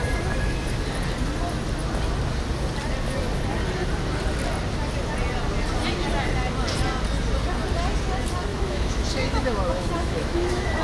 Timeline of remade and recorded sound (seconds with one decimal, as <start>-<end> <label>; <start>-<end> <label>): 0.0-8.5 recorded; 8.5-10.8 remade